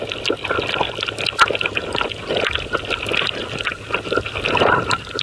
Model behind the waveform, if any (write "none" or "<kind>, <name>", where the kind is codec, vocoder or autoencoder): none